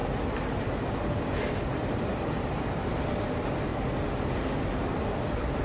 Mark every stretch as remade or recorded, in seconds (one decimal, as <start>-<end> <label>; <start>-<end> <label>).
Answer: 0.0-1.2 recorded; 1.2-3.7 remade; 3.7-4.3 recorded; 4.3-5.6 remade